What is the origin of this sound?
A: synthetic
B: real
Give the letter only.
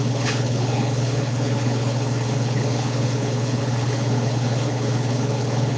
A